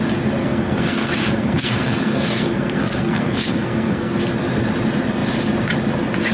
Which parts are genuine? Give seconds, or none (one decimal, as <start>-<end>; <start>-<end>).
0.0-0.4; 4.2-6.3